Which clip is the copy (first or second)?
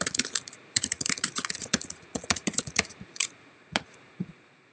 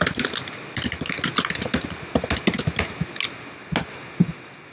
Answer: first